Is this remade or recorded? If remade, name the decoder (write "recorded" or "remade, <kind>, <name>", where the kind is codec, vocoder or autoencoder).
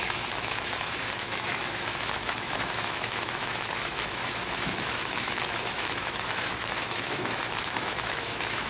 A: remade, autoencoder, DAC-VAE